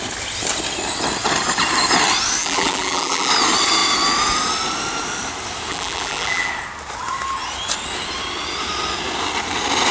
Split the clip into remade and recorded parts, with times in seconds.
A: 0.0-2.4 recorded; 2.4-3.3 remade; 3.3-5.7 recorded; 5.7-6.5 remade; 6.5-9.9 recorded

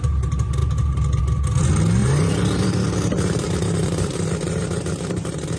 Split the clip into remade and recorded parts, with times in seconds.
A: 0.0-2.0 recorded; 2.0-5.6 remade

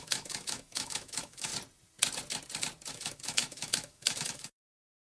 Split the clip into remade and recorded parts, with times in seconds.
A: 0.0-1.5 remade; 1.5-2.9 recorded; 2.9-5.2 remade